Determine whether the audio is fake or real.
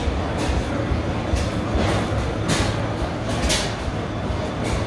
real